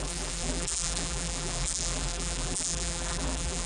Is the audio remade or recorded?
remade